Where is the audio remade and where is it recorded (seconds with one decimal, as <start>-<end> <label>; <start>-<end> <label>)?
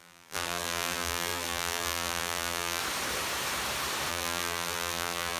0.0-2.8 remade; 2.8-4.1 recorded; 4.1-5.4 remade